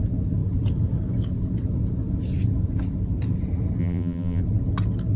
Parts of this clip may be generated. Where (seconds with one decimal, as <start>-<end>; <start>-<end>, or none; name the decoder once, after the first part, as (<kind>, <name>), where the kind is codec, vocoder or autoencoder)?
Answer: 3.8-4.4 (vocoder, BigVGAN v2)